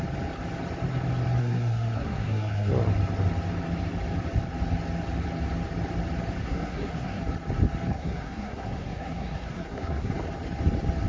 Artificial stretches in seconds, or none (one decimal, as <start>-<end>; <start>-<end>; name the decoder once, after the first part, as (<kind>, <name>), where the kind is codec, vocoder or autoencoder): 1.4-2.7 (codec, SNAC); 6.4-7.2; 7.9-10.1